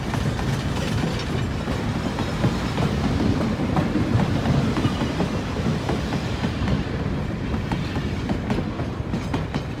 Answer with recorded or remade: recorded